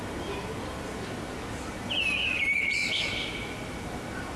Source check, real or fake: real